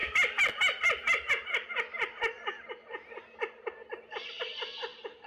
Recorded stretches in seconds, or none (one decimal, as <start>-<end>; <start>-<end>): 0.0-5.3